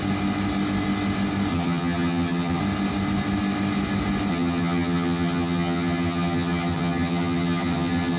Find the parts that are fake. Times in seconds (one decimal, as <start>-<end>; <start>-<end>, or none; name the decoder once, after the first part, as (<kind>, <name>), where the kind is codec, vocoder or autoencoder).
1.5-2.6 (vocoder, HiFi-GAN); 4.3-8.2